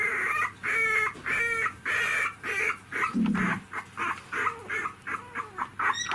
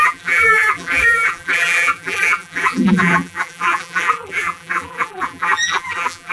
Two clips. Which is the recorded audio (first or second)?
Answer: first